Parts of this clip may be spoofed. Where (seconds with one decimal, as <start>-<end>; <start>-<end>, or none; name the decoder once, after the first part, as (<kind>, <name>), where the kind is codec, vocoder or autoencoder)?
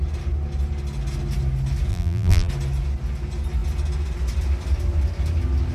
1.9-2.5 (vocoder, BigVGAN v2)